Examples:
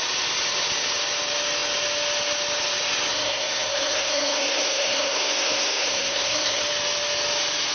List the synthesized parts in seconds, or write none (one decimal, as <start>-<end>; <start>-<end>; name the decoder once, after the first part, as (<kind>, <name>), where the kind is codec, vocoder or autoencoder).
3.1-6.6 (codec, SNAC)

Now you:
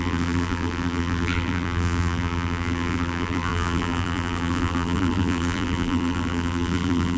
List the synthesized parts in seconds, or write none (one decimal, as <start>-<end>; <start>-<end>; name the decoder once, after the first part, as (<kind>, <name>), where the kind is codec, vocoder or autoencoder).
0.0-7.2 (vocoder, BigVGAN v2)

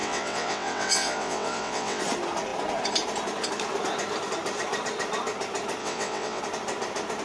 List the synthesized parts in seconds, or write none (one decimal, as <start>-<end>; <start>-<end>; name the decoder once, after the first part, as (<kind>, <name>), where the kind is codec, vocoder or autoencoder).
0.0-2.0 (vocoder, WaveNeXt); 5.8-6.4